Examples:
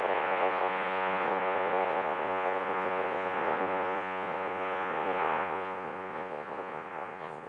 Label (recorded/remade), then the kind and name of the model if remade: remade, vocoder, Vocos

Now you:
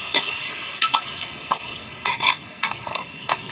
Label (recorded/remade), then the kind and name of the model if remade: remade, codec, SNAC